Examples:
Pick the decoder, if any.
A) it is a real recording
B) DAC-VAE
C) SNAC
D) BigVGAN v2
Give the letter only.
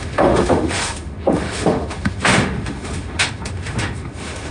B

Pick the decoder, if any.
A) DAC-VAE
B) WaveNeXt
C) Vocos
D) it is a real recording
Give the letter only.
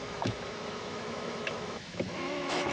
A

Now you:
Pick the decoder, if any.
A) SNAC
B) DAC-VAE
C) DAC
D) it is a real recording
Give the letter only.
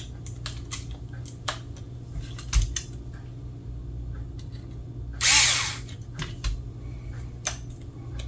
D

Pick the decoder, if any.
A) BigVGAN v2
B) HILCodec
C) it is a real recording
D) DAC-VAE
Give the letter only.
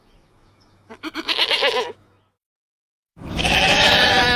D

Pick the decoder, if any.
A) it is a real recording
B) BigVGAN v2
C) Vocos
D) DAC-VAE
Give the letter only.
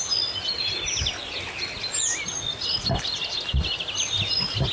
A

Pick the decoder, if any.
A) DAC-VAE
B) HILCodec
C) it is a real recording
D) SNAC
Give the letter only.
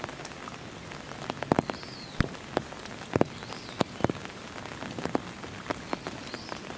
C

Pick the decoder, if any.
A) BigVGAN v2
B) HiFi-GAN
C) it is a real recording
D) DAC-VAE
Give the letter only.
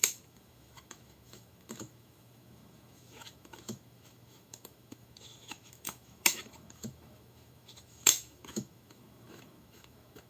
D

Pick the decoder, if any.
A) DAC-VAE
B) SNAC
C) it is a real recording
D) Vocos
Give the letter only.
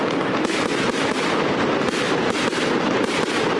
C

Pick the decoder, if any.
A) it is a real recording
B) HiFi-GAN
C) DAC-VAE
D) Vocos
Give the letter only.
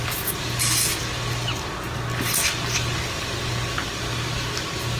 A